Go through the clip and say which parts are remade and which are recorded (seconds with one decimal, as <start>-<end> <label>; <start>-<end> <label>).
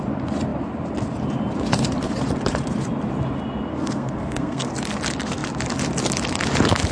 0.0-3.7 recorded; 3.7-4.7 remade; 4.7-6.9 recorded